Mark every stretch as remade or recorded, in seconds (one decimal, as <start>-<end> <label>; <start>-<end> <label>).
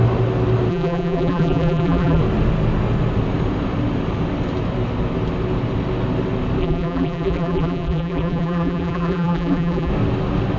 0.0-0.7 recorded; 0.7-2.2 remade; 2.2-6.6 recorded; 6.6-9.9 remade; 9.9-10.6 recorded